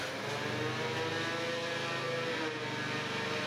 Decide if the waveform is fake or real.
real